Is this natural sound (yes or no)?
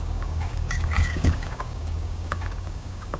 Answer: no